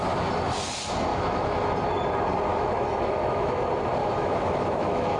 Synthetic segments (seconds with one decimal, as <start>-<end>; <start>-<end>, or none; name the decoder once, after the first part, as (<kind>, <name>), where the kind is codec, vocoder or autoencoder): 1.1-1.7 (autoencoder, DAC-VAE); 2.5-3.6; 4.0-5.2